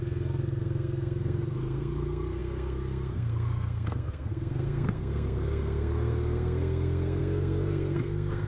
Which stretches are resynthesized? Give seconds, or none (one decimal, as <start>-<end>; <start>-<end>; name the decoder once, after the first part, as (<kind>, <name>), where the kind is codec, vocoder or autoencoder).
0.0-8.5 (codec, SNAC)